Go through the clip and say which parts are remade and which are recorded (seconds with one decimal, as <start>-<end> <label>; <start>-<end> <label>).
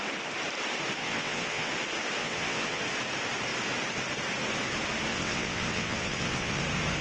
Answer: 0.0-1.0 recorded; 1.0-1.7 remade; 1.7-2.2 recorded; 2.2-2.8 remade; 2.8-5.1 recorded; 5.1-6.6 remade; 6.6-7.0 recorded